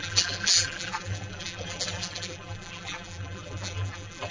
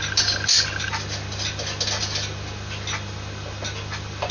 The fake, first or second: first